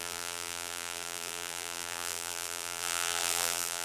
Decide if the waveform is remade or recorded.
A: remade